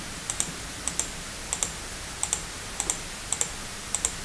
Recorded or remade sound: recorded